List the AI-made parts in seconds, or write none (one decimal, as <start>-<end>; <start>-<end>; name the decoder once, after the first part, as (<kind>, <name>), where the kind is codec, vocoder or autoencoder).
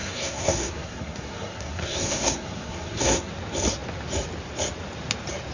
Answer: 0.0-3.3 (codec, SNAC)